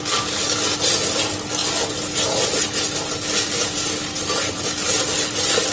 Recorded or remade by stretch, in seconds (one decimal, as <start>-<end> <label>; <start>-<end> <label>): 0.0-5.7 recorded